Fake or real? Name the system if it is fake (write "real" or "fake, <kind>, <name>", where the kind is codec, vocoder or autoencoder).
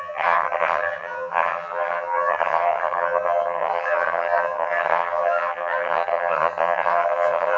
fake, vocoder, HiFi-GAN